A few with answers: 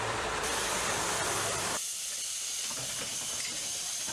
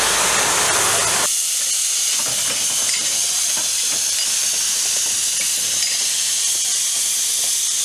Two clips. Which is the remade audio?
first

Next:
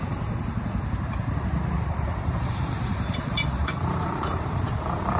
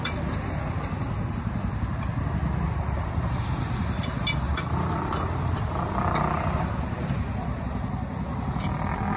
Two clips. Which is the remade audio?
first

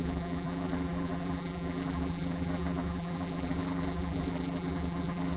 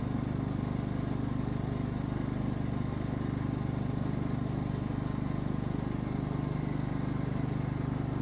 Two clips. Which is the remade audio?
first